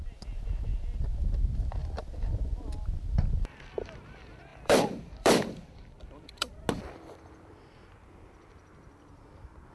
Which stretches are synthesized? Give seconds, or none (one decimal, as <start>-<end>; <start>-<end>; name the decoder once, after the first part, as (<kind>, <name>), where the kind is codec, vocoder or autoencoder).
4.5-6.7 (vocoder, BigVGAN v2)